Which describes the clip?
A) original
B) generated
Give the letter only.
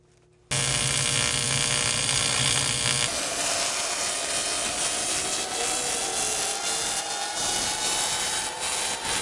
A